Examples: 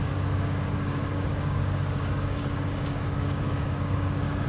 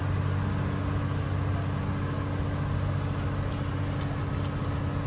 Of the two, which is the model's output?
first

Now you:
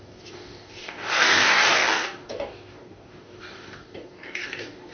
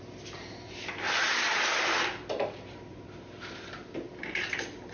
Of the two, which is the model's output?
first